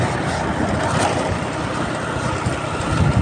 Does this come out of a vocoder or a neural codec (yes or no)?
no